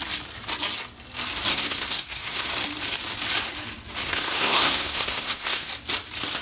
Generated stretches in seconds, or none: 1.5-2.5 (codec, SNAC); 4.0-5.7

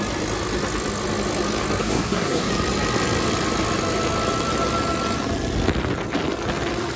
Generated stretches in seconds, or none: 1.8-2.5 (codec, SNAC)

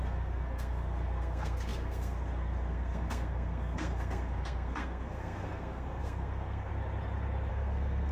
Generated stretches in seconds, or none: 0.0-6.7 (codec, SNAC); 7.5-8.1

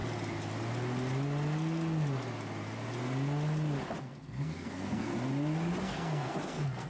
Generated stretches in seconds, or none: 4.0-5.1 (codec, SNAC); 5.8-6.9

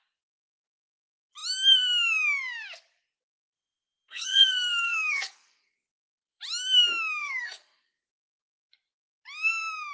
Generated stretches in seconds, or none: 3.5-6.4 (codec, SNAC); 7.2-8.3

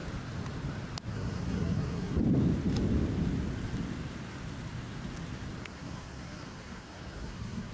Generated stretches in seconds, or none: 1.1-2.2 (codec, SNAC); 5.6-7.7

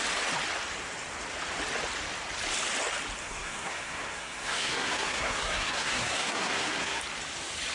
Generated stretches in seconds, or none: 3.2-7.0 (codec, SNAC)